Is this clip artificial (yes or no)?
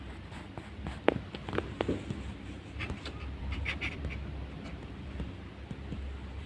yes